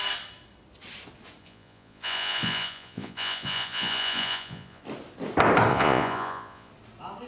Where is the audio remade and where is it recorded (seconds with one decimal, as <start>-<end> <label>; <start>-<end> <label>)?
0.0-1.4 recorded; 1.4-4.8 remade; 4.8-5.7 recorded; 5.7-6.7 remade; 6.7-7.3 recorded